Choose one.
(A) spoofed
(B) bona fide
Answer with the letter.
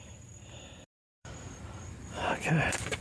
A